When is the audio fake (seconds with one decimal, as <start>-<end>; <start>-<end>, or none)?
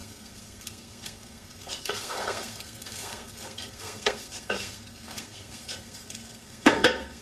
0.0-7.2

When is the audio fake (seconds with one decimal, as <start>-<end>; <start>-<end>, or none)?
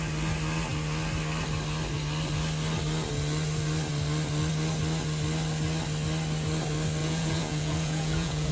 7.0-8.5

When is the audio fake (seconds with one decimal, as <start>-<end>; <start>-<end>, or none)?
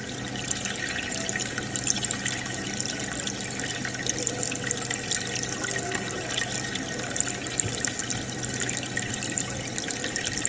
none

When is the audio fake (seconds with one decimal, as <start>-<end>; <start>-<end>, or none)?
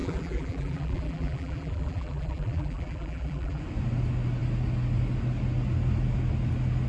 0.0-3.6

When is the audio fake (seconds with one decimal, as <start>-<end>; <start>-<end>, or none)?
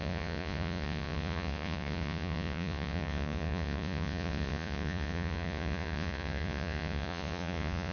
0.0-7.9